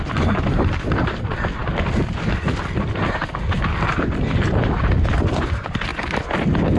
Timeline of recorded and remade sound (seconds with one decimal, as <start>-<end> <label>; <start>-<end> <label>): 0.0-6.8 recorded